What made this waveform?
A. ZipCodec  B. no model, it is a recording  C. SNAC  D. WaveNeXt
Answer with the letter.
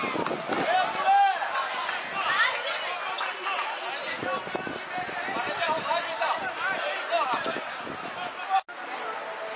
B